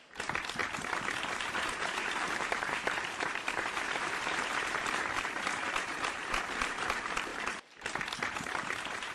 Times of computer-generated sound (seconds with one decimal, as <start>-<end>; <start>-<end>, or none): 0.0-0.6; 1.6-9.1